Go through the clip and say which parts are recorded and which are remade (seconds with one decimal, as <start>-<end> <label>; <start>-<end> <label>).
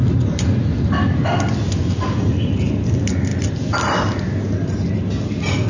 0.0-0.7 recorded; 0.7-1.2 remade; 1.2-3.3 recorded; 3.3-4.0 remade; 4.0-5.7 recorded